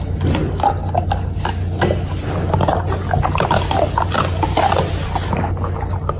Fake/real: real